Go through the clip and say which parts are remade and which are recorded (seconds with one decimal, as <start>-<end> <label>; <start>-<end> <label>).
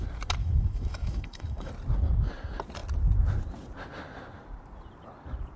0.0-0.4 recorded; 0.4-1.7 remade; 1.7-5.6 recorded